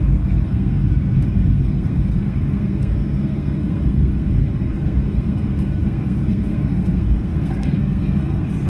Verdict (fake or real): fake